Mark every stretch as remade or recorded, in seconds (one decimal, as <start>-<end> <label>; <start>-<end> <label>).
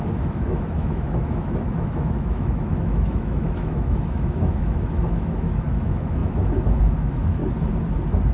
0.0-7.4 remade; 7.4-8.3 recorded